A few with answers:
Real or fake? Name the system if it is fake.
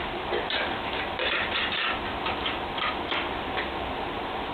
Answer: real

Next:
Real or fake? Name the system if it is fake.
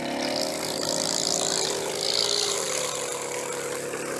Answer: real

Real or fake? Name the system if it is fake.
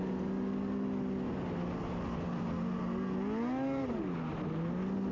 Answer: real